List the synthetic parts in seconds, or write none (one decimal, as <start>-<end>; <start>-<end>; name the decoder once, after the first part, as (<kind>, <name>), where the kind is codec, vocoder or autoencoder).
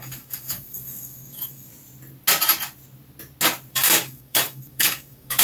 0.0-1.7 (codec, DAC); 3.7-5.4